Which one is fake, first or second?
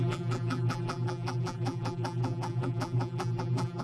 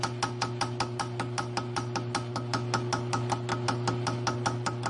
first